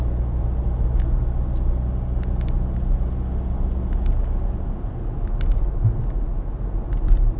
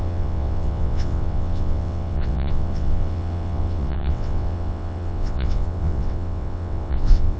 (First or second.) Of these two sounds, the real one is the first